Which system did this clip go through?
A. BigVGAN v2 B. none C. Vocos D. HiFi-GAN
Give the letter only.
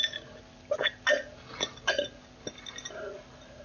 B